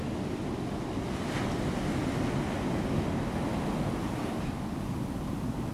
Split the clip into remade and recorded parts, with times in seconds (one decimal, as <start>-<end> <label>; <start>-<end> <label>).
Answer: 0.0-5.7 recorded